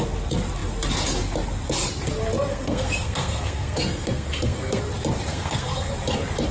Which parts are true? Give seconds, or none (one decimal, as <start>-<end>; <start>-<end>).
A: 0.0-2.5; 4.8-5.3; 5.9-6.5